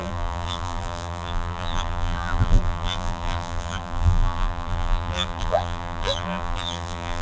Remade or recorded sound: remade